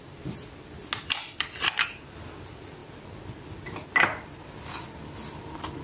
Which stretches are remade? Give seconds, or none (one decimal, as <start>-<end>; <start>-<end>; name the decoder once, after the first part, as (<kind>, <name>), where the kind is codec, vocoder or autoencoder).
none